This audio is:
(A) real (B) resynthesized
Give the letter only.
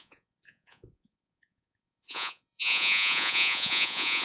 B